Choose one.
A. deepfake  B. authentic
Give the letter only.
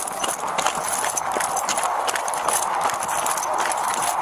B